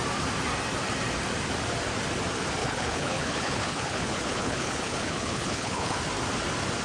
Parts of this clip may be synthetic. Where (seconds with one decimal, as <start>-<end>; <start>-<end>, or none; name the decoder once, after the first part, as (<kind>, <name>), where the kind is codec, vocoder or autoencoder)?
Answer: 2.6-6.0 (codec, HILCodec)